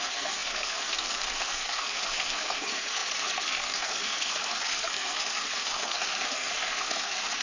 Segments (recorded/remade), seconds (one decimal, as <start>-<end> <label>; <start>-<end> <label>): 0.0-7.4 remade